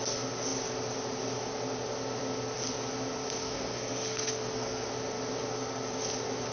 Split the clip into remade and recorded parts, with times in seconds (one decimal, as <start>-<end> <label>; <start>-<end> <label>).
0.0-3.4 recorded; 3.4-4.9 remade; 4.9-6.5 recorded